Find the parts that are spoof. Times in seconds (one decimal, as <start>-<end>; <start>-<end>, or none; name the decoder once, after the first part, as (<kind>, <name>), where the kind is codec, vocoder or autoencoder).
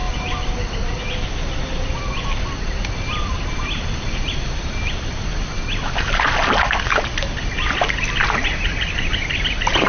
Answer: none